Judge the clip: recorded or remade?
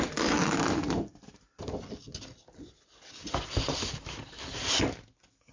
recorded